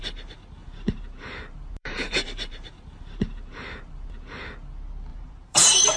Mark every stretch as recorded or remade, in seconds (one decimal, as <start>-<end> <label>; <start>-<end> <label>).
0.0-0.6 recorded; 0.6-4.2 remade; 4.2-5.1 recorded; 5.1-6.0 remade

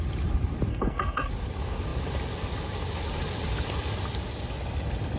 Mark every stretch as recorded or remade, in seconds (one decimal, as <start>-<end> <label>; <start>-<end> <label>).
0.0-0.7 recorded; 0.7-1.3 remade; 1.3-5.2 recorded

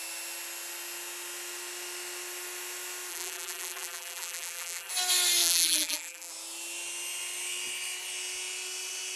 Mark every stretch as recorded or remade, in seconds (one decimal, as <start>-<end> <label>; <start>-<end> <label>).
0.0-3.1 recorded; 3.1-4.9 remade; 4.9-5.4 recorded; 5.4-6.3 remade; 6.3-9.2 recorded

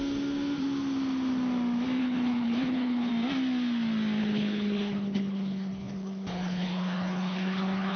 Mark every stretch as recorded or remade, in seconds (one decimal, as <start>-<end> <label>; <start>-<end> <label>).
0.0-2.0 recorded; 2.0-3.1 remade; 3.1-4.2 recorded; 4.2-8.0 remade

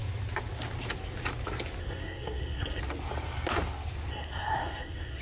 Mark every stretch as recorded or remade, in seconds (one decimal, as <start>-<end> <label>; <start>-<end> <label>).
0.0-1.8 recorded; 1.8-2.8 remade; 2.8-4.1 recorded; 4.1-5.2 remade

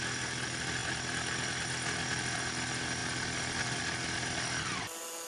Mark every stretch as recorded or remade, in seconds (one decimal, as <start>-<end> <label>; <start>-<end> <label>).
0.0-5.3 recorded

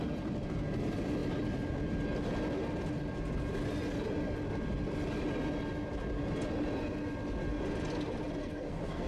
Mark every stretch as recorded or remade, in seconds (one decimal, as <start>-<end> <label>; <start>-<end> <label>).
0.0-8.4 recorded; 8.4-9.1 remade